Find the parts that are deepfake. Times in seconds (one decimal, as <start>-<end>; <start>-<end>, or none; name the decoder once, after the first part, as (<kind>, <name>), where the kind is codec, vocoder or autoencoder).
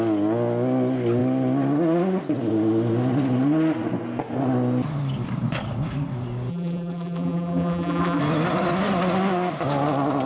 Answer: 6.5-8.2 (vocoder, BigVGAN v2)